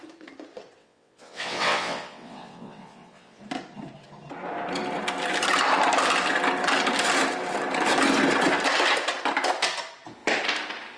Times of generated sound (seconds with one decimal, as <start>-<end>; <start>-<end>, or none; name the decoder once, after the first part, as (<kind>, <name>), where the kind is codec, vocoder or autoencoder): 0.8-3.4 (vocoder, WaveNeXt)